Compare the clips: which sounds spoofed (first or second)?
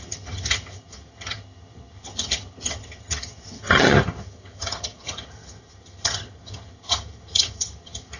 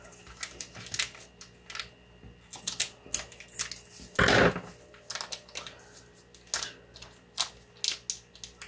first